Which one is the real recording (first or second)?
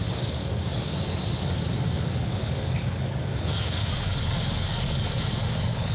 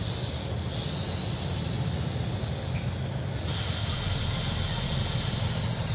second